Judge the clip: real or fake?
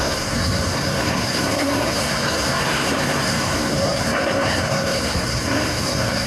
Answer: fake